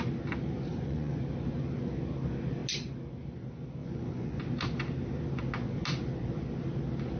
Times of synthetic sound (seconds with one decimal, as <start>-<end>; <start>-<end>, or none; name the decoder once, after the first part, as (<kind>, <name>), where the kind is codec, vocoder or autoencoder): 0.7-1.2 (vocoder, Vocos); 3.8-4.4